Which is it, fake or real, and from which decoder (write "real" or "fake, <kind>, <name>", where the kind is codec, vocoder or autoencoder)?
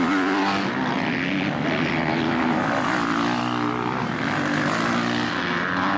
real